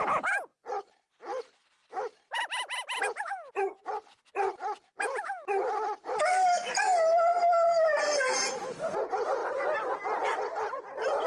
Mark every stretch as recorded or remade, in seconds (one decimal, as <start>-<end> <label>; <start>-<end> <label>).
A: 0.0-7.9 recorded; 7.9-8.6 remade; 8.6-11.3 recorded